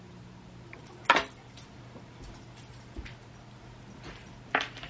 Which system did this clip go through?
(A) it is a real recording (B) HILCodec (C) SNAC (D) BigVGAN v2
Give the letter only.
A